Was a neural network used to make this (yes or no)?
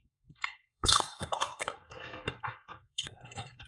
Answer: yes